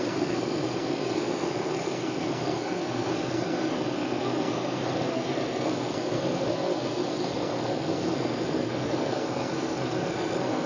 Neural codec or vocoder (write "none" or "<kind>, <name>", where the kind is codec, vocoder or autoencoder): codec, SNAC